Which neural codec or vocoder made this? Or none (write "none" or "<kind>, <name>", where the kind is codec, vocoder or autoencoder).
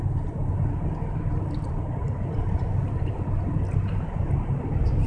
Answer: none